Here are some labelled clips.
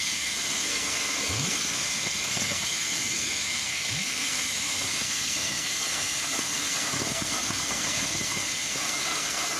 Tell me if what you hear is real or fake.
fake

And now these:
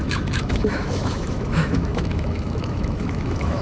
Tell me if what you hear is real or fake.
fake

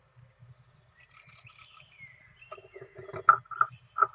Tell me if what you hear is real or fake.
real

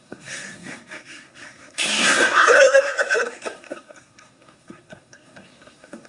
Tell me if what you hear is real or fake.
fake